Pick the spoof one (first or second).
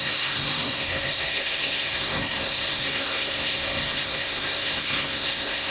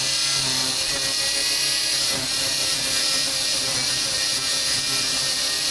first